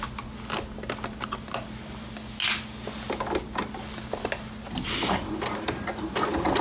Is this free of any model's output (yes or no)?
yes